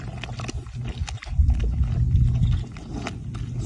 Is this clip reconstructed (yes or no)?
no